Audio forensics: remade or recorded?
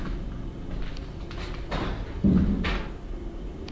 recorded